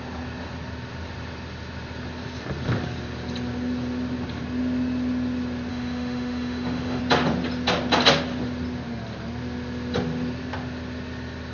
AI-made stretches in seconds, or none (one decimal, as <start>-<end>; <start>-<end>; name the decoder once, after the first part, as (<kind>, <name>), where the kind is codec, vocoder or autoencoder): 5.7-7.0 (autoencoder, DAC-VAE)